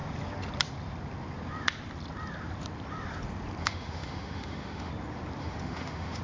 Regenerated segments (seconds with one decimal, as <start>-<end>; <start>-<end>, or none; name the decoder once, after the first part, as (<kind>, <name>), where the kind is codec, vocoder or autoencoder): 3.6-4.9 (autoencoder, DAC-VAE); 5.4-6.2

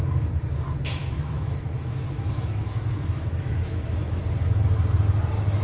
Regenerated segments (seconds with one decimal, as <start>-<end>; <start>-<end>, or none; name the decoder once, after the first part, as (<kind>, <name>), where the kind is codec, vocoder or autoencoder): 1.0-4.2 (autoencoder, DAC-VAE)

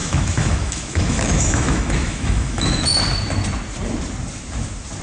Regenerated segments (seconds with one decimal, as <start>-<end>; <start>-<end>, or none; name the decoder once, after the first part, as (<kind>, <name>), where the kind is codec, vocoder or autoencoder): 0.0-3.0 (autoencoder, DAC-VAE)

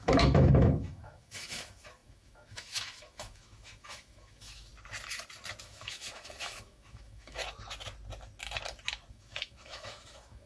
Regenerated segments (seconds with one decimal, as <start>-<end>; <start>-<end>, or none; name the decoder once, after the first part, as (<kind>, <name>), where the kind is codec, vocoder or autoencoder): 0.0-4.7 (autoencoder, DAC-VAE); 5.6-7.4; 9.1-10.5

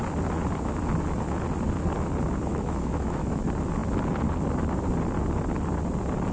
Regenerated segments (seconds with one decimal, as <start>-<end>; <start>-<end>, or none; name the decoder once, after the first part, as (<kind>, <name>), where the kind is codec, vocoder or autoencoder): 2.5-3.4 (autoencoder, DAC-VAE)

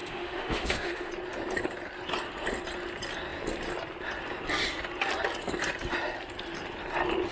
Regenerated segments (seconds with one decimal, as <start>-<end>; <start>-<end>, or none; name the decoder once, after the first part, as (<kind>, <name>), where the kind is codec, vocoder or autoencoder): 0.0-1.1 (autoencoder, DAC-VAE)

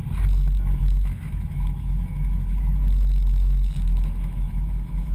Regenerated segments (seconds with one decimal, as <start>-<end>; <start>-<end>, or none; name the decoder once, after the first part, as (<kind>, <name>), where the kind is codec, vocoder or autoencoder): 0.8-5.1 (autoencoder, DAC-VAE)

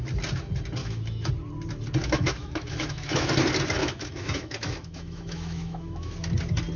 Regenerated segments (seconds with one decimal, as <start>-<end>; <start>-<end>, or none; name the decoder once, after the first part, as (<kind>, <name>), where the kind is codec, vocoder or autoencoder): 0.8-1.3 (autoencoder, DAC-VAE); 2.0-3.3; 3.8-6.1